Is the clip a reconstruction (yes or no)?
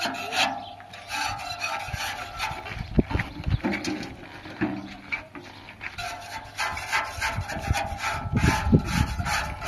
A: no